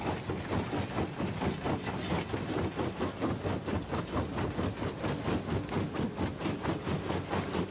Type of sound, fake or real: real